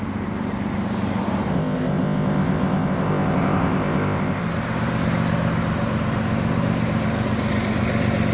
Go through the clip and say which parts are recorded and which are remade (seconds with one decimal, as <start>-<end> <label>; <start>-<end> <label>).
0.0-1.5 recorded; 1.5-4.4 remade; 4.4-8.3 recorded

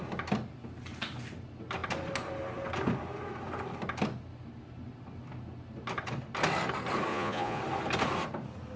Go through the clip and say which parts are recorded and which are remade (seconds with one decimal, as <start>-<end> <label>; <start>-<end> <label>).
0.0-7.1 recorded; 7.1-7.6 remade; 7.6-8.8 recorded

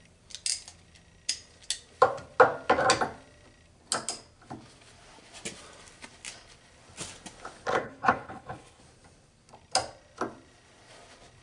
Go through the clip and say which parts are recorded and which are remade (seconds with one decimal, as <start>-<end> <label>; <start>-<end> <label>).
0.0-7.7 recorded; 7.7-8.8 remade; 8.8-11.4 recorded